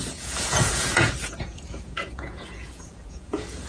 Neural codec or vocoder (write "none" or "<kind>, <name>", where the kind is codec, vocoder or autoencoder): vocoder, Vocos